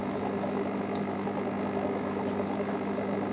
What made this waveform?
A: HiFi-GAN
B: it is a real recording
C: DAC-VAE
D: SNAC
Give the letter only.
C